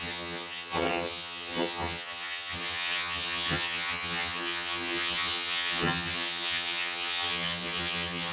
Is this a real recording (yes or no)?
no